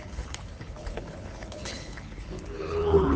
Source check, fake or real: fake